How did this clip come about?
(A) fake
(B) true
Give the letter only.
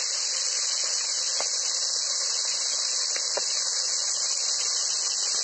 B